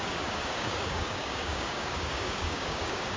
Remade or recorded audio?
remade